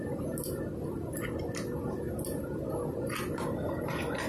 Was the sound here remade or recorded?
recorded